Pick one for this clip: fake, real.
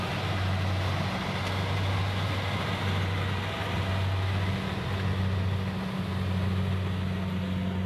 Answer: real